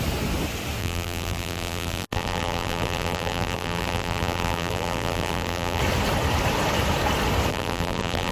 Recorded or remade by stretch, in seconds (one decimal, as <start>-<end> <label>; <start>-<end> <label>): 0.0-0.8 recorded; 0.8-5.8 remade; 5.8-7.5 recorded; 7.5-8.3 remade